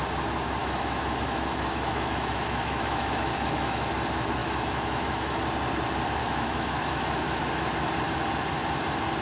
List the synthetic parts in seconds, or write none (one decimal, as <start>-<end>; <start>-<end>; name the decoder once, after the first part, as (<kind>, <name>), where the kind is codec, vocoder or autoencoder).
0.6-3.9 (autoencoder, DAC-VAE); 4.4-5.4; 6.2-7.4